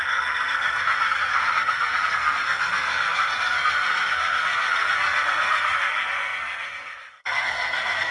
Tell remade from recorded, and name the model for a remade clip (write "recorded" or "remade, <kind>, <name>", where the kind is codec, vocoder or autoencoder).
remade, codec, SNAC